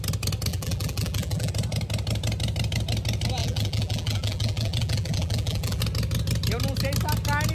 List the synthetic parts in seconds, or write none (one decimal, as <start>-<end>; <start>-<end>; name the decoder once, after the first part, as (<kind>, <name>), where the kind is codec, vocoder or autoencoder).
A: 0.5-1.5 (vocoder, BigVGAN v2); 3.4-5.8

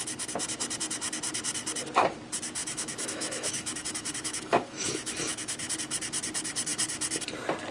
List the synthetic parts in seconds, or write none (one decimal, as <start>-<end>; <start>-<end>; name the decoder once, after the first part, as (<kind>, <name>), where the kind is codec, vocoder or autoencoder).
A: 2.6-5.7 (autoencoder, DAC-VAE)

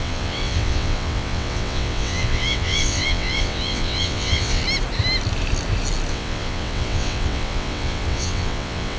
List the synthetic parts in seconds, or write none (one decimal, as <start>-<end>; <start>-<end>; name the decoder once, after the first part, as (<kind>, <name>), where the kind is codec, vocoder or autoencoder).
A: 0.0-4.6 (vocoder, WaveNeXt); 6.1-9.0

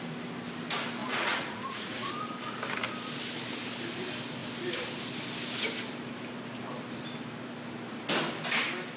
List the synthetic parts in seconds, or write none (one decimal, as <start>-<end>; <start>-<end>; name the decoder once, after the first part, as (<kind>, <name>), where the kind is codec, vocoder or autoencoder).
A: 1.0-2.1 (vocoder, Vocos)